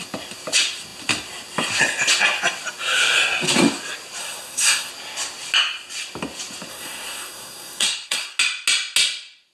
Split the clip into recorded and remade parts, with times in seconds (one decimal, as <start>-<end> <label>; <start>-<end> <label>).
0.0-4.2 recorded; 4.2-4.9 remade; 4.9-6.7 recorded; 6.7-8.4 remade; 8.4-9.5 recorded

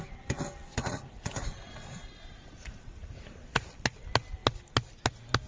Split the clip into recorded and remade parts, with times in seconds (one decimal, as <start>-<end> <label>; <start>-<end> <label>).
0.0-0.7 recorded; 0.7-3.2 remade; 3.2-5.5 recorded

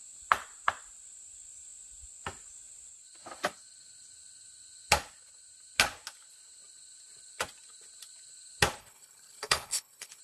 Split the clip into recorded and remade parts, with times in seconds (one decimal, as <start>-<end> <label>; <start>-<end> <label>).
0.0-8.8 recorded; 8.8-10.2 remade

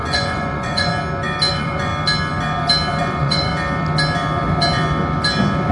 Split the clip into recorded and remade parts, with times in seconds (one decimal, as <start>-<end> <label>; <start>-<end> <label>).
0.0-0.9 remade; 0.9-1.5 recorded; 1.5-1.9 remade; 1.9-3.0 recorded; 3.0-3.5 remade; 3.5-5.7 recorded